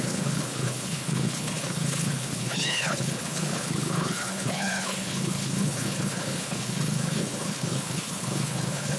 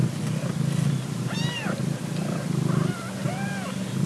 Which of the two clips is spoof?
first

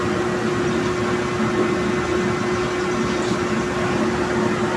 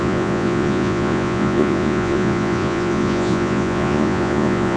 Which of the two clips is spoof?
second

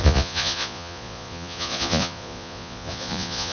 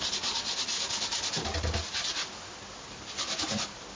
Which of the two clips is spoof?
first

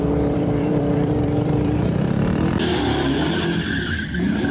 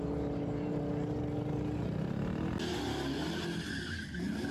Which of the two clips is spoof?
first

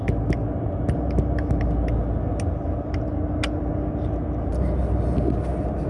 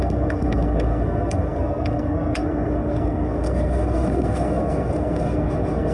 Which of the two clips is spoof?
second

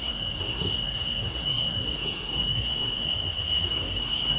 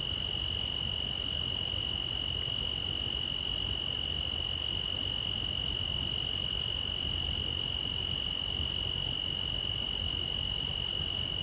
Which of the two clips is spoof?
first